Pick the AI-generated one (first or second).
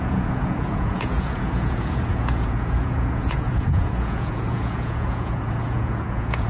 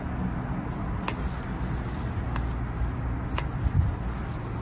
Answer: first